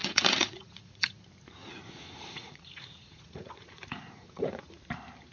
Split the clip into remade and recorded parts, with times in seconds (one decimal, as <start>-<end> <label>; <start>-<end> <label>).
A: 0.0-1.2 remade; 1.2-1.6 recorded; 1.6-4.8 remade; 4.8-5.3 recorded